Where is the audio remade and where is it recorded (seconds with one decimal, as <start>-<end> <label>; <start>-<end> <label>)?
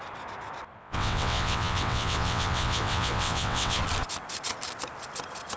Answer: 0.0-0.8 recorded; 0.8-3.8 remade; 3.8-5.6 recorded